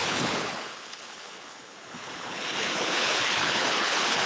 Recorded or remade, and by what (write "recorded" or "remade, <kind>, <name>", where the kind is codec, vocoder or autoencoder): remade, codec, HILCodec